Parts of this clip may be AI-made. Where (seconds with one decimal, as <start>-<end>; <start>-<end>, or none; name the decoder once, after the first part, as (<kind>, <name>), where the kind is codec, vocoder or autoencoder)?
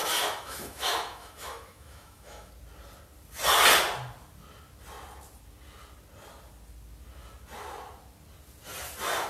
0.0-2.5 (autoencoder, DAC-VAE)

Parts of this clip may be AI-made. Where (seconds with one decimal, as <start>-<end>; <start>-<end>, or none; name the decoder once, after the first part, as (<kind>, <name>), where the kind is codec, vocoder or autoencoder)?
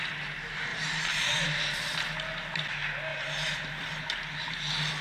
0.7-1.6 (vocoder, BigVGAN v2); 3.1-4.0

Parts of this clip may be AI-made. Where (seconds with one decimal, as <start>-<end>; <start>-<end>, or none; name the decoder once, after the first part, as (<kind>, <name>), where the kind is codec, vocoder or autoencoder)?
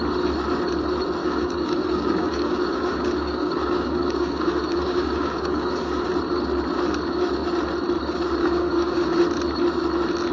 1.2-6.1 (codec, DAC); 8.4-9.2